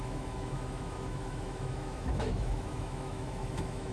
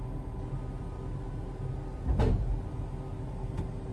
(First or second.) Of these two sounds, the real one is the second